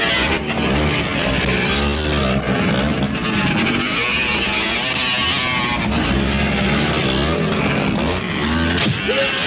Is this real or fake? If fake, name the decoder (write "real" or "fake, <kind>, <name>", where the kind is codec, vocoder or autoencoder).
real